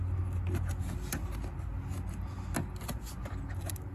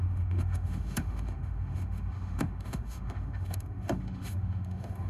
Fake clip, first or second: second